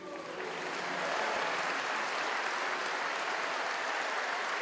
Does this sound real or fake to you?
real